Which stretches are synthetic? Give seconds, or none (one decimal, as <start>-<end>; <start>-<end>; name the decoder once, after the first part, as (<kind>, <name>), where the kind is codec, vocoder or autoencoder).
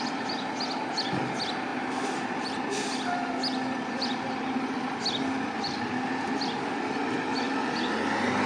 none